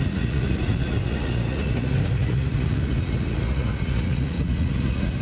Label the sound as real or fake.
fake